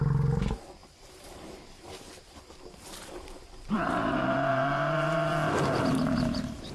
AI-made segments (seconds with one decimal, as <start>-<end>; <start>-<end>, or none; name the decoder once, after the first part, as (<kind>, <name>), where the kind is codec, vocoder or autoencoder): 0.0-6.7 (vocoder, BigVGAN v2)